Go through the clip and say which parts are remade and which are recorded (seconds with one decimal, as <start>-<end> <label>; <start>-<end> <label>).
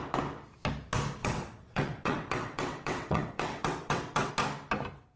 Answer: 0.0-1.2 recorded; 1.2-4.3 remade; 4.3-5.2 recorded